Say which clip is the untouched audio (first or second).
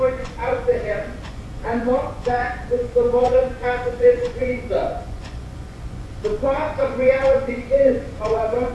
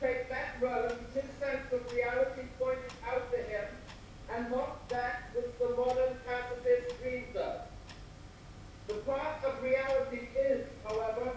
second